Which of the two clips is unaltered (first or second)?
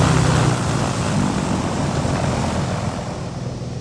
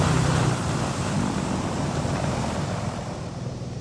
first